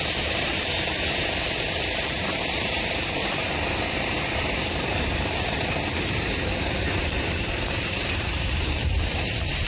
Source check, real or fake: fake